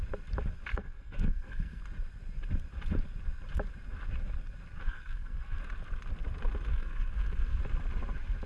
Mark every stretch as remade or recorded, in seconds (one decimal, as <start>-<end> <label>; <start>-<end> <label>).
0.0-0.7 recorded; 0.7-1.8 remade; 1.8-4.8 recorded; 4.8-5.6 remade; 5.6-6.7 recorded; 6.7-7.6 remade; 7.6-8.5 recorded